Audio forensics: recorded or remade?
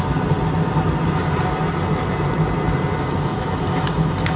recorded